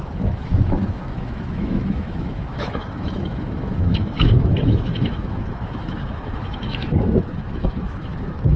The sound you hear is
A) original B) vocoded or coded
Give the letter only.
B